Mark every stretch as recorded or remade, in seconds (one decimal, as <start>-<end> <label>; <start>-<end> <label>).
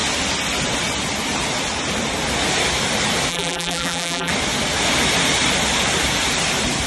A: 0.0-3.3 recorded; 3.3-4.3 remade; 4.3-6.9 recorded